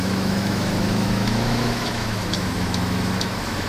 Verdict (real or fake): fake